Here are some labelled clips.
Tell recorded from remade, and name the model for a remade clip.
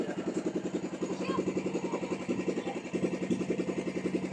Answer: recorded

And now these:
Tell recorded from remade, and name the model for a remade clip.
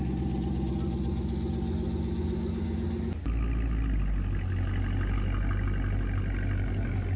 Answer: recorded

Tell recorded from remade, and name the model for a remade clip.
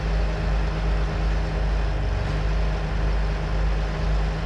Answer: recorded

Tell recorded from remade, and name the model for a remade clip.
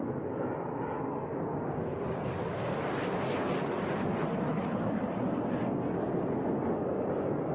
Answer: recorded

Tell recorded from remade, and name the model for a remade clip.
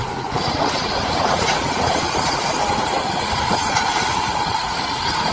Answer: remade, vocoder, Vocos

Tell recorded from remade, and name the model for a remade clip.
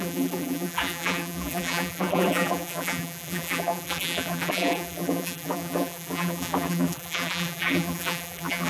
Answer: remade, vocoder, BigVGAN v2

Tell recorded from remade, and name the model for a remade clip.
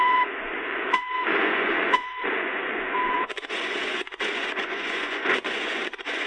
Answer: remade, vocoder, Vocos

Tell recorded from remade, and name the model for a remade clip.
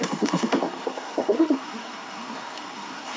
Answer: remade, codec, SNAC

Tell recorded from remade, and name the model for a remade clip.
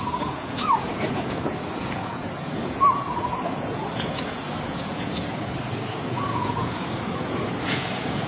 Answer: remade, vocoder, Vocos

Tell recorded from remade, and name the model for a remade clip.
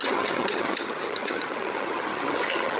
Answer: remade, vocoder, HiFi-GAN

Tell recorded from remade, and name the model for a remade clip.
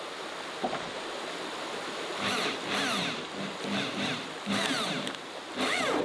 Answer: recorded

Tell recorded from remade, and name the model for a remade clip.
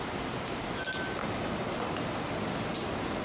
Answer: recorded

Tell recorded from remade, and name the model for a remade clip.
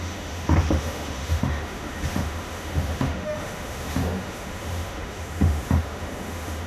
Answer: remade, autoencoder, DAC-VAE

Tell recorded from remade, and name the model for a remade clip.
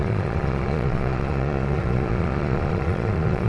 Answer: remade, vocoder, Vocos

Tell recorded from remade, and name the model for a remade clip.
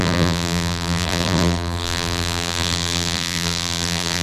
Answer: remade, vocoder, BigVGAN v2